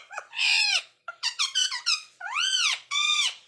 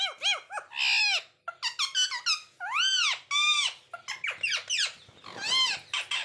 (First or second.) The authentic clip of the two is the second